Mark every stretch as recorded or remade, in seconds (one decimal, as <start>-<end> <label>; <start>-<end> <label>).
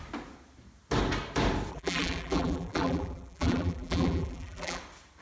0.0-1.7 recorded; 1.7-4.8 remade; 4.8-5.2 recorded